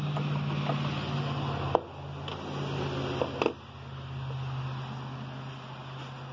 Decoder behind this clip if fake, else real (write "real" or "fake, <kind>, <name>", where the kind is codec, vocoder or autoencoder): real